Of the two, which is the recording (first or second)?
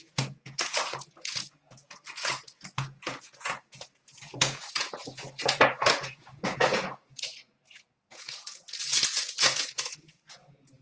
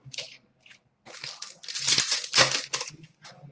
second